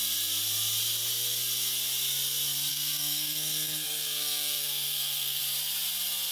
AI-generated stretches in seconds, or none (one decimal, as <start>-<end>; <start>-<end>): 2.7-5.4